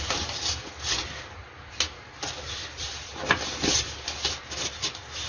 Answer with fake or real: real